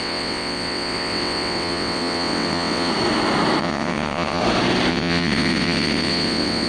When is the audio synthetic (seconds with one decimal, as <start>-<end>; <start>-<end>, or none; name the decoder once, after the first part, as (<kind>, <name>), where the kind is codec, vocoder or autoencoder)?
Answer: 0.0-2.9 (vocoder, WaveNeXt); 3.6-4.4; 4.9-6.7